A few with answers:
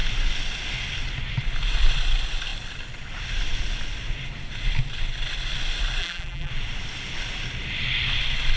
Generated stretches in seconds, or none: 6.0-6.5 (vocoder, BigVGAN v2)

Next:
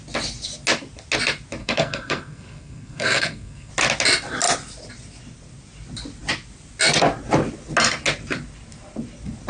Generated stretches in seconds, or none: 1.6-3.7 (codec, SNAC)

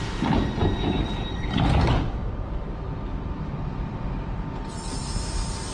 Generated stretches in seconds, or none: none

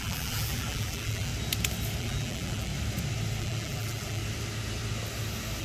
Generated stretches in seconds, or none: 0.0-1.3 (vocoder, BigVGAN v2); 2.0-2.7; 3.4-4.2